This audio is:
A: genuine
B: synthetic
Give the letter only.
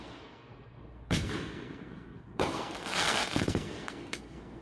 B